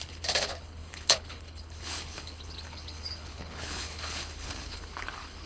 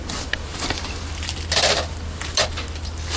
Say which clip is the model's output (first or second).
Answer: first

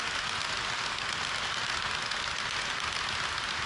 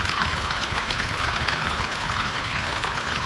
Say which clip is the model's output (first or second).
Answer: second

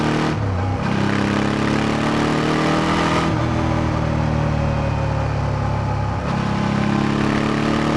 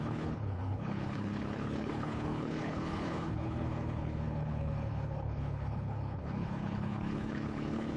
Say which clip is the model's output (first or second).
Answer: second